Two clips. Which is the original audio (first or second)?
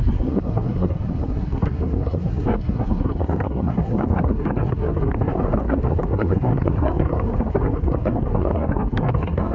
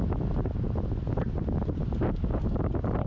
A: second